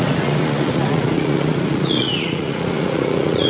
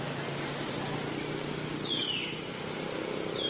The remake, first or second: first